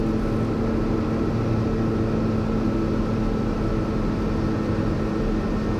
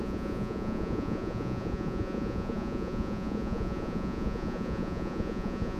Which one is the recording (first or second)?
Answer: first